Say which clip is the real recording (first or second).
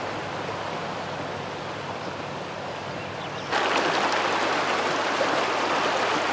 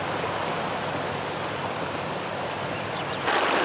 first